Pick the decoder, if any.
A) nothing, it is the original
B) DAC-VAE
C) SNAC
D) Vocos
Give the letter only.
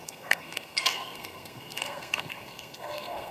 C